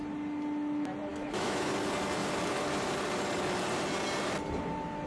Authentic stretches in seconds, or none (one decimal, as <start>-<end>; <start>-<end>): 0.0-1.1; 1.7-5.1